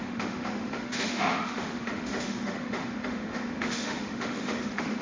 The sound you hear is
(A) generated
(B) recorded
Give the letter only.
A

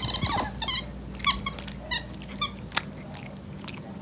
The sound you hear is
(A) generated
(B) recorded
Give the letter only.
B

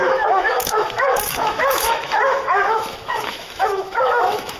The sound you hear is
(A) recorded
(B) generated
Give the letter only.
B